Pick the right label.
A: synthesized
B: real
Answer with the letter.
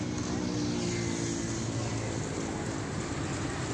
B